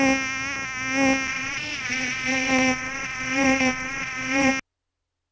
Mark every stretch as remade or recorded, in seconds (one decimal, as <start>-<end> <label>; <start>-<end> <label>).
0.0-1.3 recorded; 1.3-4.5 remade; 4.5-5.3 recorded